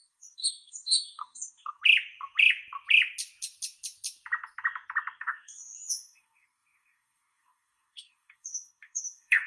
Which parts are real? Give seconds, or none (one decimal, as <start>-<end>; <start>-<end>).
1.8-5.2